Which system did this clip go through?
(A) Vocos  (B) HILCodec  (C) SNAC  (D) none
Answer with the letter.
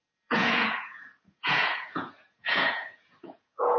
A